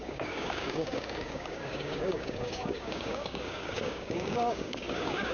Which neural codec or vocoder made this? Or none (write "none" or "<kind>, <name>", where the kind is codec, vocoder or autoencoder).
codec, DAC